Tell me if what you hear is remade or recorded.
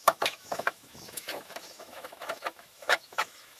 remade